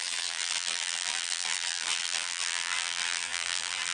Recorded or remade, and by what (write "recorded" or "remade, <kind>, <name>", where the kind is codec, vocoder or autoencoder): remade, vocoder, BigVGAN v2